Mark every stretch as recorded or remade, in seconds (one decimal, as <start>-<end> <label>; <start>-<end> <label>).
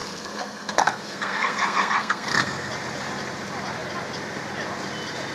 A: 0.0-2.7 remade; 2.7-5.3 recorded